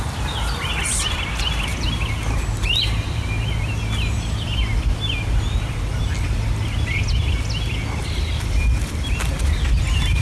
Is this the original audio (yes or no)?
yes